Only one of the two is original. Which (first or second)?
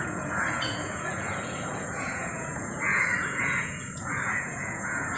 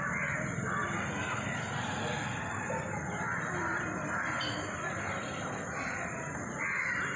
second